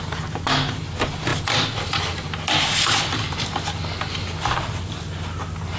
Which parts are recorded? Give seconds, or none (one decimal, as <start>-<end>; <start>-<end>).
0.0-5.8

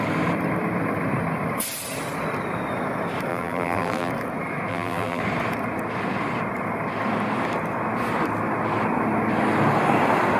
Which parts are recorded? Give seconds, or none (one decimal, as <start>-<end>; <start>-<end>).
0.0-3.3; 4.1-4.7; 5.2-10.4

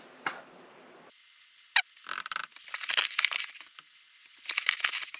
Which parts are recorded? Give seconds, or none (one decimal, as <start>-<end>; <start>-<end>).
0.0-5.2

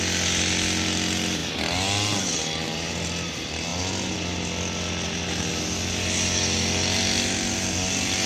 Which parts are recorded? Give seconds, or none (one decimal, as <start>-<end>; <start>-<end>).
0.0-8.3

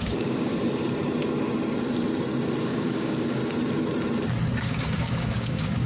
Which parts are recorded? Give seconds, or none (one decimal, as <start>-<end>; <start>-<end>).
0.5-2.6; 3.4-4.6

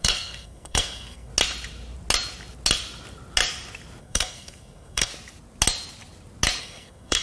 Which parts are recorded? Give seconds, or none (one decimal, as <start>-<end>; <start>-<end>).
1.3-4.0; 5.1-6.6

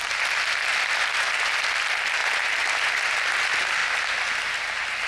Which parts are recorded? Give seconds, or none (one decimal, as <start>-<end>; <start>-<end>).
0.0-5.1

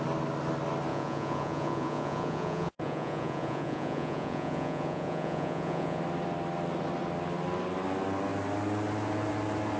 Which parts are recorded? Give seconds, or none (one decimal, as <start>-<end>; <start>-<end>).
0.0-0.9; 6.0-9.8